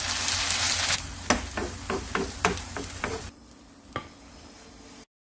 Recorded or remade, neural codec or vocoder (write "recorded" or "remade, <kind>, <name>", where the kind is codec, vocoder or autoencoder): recorded